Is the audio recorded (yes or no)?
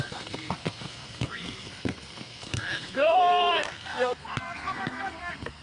no